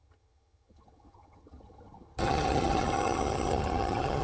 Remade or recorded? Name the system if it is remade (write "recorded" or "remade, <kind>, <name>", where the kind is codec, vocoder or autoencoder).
remade, vocoder, HiFi-GAN